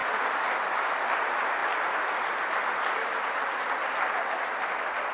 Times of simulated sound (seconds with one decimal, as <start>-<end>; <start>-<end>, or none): none